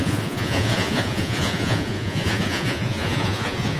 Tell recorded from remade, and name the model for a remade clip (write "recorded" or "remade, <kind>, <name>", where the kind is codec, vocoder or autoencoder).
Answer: remade, vocoder, Vocos